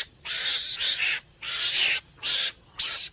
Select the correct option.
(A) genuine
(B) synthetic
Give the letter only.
A